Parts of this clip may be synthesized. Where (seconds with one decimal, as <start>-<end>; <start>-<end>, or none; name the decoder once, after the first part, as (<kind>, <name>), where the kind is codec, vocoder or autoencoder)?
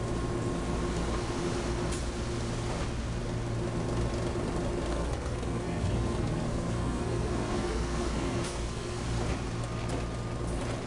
4.9-9.0 (codec, SNAC)